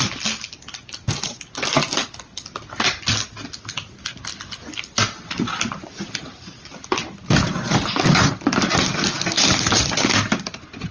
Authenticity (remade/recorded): recorded